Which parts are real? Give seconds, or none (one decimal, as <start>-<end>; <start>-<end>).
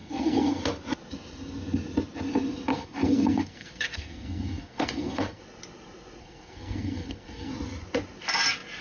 0.6-2.7; 5.4-6.2; 7.5-8.8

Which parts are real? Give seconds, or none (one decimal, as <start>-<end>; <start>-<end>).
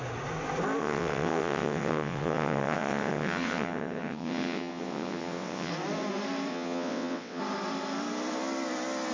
0.0-0.8; 5.7-6.5; 7.4-9.1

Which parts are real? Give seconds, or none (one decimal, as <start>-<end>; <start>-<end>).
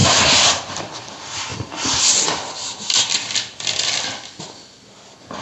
0.9-5.4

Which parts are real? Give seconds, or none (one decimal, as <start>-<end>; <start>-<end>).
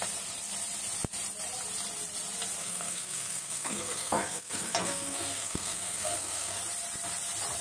0.0-2.6; 6.6-7.6